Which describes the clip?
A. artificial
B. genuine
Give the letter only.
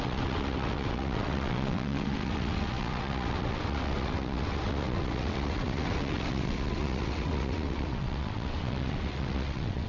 A